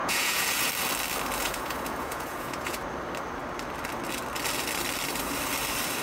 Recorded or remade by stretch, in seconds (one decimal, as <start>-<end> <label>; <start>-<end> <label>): 0.0-0.7 remade; 0.7-1.4 recorded; 1.4-2.8 remade; 2.8-6.0 recorded